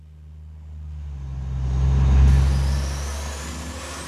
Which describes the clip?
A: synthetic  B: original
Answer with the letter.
B